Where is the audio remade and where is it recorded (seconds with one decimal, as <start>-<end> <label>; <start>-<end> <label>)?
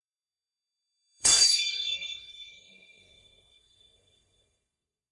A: 0.0-5.1 remade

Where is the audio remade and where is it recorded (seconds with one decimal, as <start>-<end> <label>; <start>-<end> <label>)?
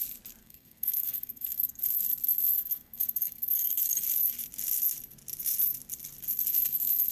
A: 0.0-0.4 recorded; 0.4-1.8 remade; 1.8-2.5 recorded; 2.5-3.8 remade; 3.8-7.1 recorded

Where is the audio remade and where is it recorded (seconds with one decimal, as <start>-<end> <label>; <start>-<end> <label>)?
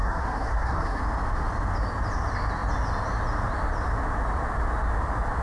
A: 0.0-1.0 remade; 1.0-5.4 recorded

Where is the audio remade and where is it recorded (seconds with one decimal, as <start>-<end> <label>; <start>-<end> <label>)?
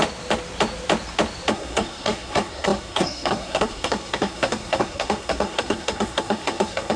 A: 0.0-1.5 recorded; 1.5-7.0 remade